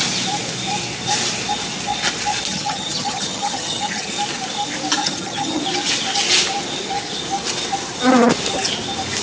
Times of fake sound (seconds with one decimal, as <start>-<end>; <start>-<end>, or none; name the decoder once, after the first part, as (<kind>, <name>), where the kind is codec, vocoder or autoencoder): 2.5-4.1 (vocoder, HiFi-GAN); 5.0-5.6